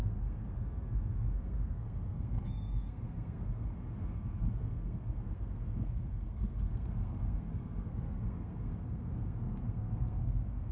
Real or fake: fake